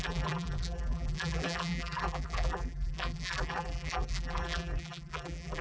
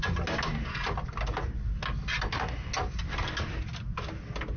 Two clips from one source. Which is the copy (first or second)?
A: first